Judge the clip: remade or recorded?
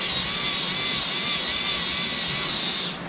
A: recorded